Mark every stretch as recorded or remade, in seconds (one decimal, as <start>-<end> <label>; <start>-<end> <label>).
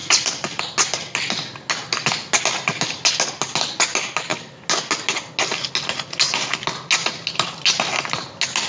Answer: 0.0-0.6 remade; 0.6-8.7 recorded